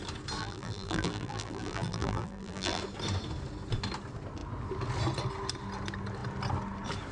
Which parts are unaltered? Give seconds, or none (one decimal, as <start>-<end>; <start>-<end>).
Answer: 0.0-0.4; 2.8-7.1